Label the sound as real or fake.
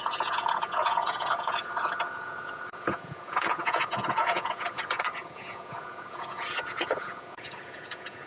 fake